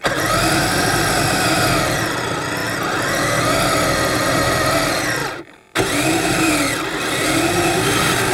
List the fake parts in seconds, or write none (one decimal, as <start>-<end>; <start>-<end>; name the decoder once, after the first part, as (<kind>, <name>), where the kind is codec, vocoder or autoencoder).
5.2-6.5 (vocoder, BigVGAN v2)